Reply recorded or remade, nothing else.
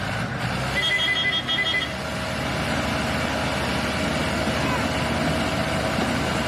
recorded